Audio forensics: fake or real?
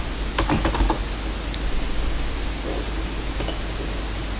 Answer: real